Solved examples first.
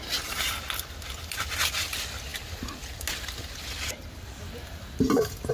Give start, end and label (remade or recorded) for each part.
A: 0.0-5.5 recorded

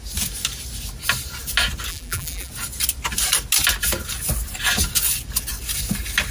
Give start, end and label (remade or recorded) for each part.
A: 0.0-1.9 recorded; 1.9-2.5 remade; 2.5-6.3 recorded

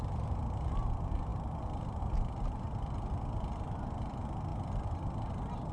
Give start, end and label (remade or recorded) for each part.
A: 0.0-5.7 recorded

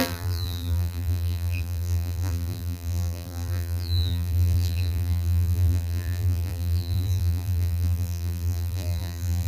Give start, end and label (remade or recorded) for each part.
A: 0.0-9.5 remade

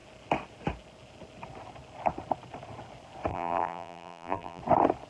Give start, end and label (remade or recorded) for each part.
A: 0.0-3.3 recorded; 3.3-4.6 remade; 4.6-5.1 recorded

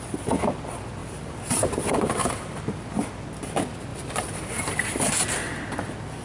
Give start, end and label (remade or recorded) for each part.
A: 0.0-1.0 recorded; 1.0-2.4 remade; 2.4-3.9 recorded; 3.9-5.0 remade; 5.0-6.2 recorded

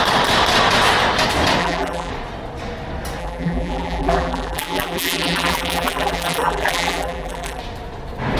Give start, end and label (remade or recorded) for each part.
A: 0.0-1.6 recorded; 1.6-2.1 remade; 2.1-3.2 recorded; 3.2-7.6 remade; 7.6-8.4 recorded

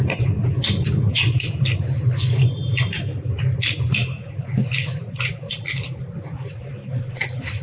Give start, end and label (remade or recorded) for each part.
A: 0.0-7.6 recorded